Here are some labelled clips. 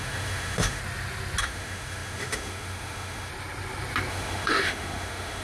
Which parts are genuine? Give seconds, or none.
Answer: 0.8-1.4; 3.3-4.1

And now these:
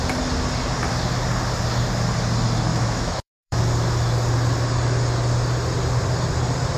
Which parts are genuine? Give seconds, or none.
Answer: 0.0-2.7; 3.6-6.8

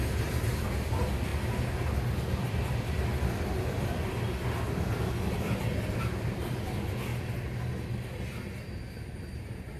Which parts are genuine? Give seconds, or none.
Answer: 0.0-9.8

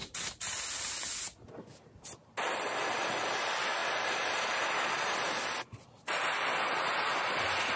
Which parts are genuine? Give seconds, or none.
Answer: 0.0-7.8

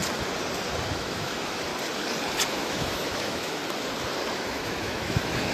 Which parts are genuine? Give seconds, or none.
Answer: 0.0-0.9; 1.7-2.5; 3.6-4.3